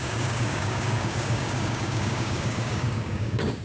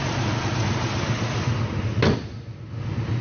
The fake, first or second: first